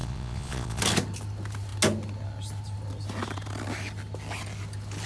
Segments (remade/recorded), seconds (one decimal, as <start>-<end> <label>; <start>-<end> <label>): 0.0-0.8 remade; 0.8-5.1 recorded